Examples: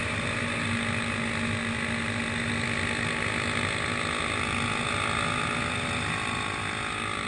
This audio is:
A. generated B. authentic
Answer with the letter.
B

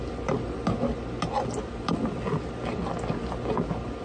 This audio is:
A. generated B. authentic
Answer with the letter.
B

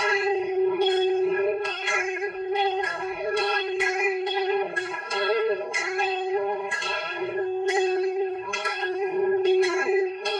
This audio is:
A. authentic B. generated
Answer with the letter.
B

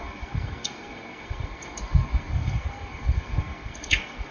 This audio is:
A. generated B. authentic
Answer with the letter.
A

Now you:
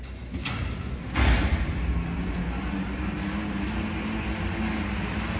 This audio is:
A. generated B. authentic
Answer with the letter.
B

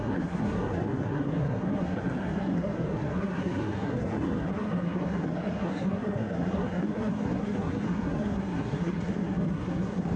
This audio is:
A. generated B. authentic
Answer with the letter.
A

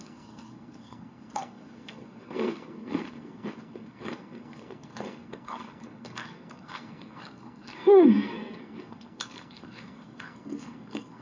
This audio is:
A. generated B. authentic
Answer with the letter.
A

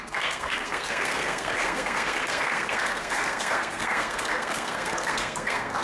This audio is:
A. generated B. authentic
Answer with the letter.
A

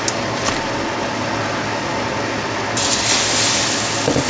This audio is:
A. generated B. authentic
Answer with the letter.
B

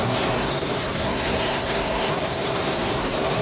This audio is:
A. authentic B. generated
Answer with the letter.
B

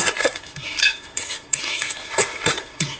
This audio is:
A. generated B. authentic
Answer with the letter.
A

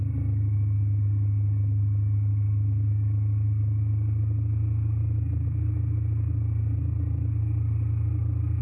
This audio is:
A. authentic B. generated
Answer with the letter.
A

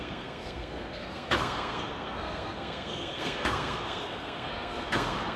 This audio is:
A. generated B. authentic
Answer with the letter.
A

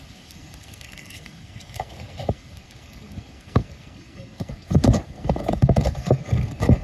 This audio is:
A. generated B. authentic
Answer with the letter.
A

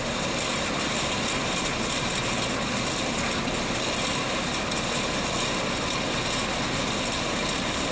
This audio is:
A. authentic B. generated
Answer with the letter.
A